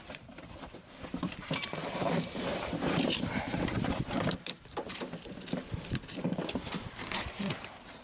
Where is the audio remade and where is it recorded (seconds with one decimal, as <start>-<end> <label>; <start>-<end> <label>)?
0.0-8.0 remade